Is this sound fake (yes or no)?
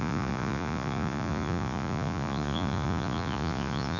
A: yes